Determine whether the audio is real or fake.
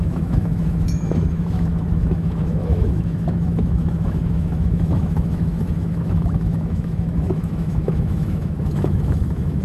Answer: fake